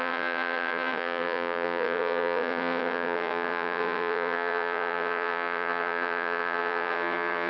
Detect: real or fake fake